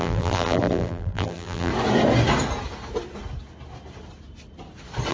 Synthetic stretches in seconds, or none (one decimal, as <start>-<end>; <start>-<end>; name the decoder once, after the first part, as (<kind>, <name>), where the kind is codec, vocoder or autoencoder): 0.0-1.7 (vocoder, BigVGAN v2)